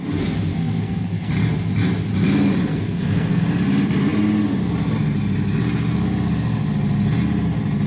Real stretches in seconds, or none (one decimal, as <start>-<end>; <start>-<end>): 0.0-0.5; 1.3-2.7; 3.4-7.9